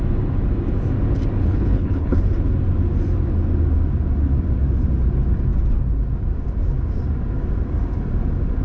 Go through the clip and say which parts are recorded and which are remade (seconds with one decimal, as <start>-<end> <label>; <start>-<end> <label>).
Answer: 0.0-1.4 recorded; 1.4-2.5 remade; 2.5-8.6 recorded